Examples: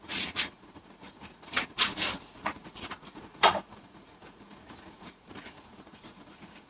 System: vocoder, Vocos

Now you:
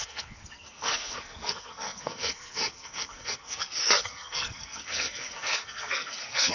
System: codec, SNAC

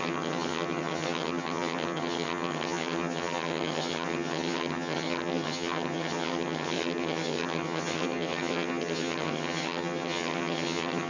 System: vocoder, HiFi-GAN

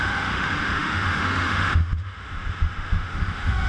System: autoencoder, DAC-VAE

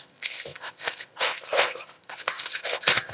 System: codec, ZipCodec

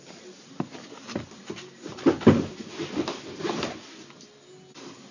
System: none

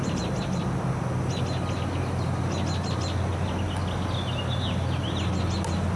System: none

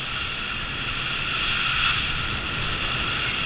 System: none